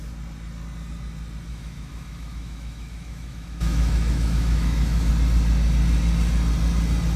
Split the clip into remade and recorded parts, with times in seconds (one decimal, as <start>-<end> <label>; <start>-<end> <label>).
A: 0.0-1.5 recorded; 1.5-5.1 remade; 5.1-7.2 recorded